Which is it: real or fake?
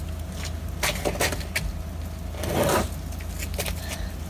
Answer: real